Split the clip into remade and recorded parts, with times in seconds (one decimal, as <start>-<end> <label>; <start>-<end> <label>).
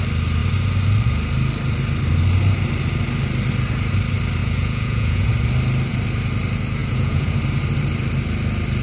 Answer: 0.0-4.4 recorded; 4.4-5.3 remade; 5.3-6.8 recorded; 6.8-7.4 remade; 7.4-8.8 recorded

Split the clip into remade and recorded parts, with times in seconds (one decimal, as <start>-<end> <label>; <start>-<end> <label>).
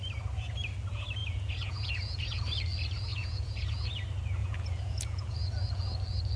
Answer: 0.0-1.2 recorded; 1.2-2.4 remade; 2.4-3.1 recorded; 3.1-3.7 remade; 3.7-4.4 recorded; 4.4-5.5 remade; 5.5-6.4 recorded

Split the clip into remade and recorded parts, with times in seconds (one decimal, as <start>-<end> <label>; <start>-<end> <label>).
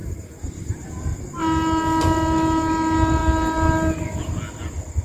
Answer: 0.0-0.9 remade; 0.9-5.0 recorded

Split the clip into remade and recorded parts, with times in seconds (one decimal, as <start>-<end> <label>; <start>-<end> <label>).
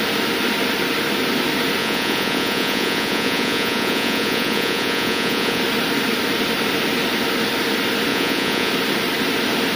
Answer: 0.0-1.8 recorded; 1.8-5.6 remade; 5.6-8.1 recorded; 8.1-8.7 remade; 8.7-9.8 recorded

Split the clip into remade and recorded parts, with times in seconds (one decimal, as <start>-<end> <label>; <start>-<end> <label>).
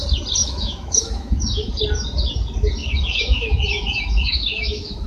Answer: 0.0-0.4 recorded; 0.4-1.8 remade; 1.8-2.8 recorded; 2.8-5.1 remade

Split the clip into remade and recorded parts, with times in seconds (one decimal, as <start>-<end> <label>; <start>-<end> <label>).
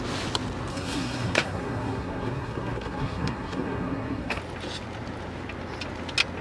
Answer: 0.0-0.7 recorded; 0.7-4.4 remade; 4.4-6.4 recorded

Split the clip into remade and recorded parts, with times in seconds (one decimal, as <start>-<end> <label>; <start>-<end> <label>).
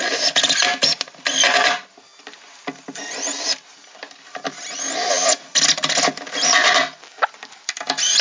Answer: 0.0-8.2 recorded